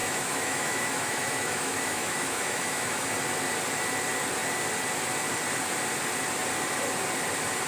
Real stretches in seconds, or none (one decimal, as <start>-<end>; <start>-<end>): 3.1-7.7